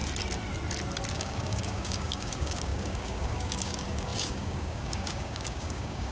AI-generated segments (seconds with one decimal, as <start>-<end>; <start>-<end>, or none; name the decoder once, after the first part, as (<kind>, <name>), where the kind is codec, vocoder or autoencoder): 1.1-6.1 (codec, DAC)